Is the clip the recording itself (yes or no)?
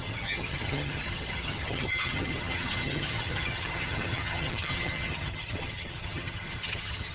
no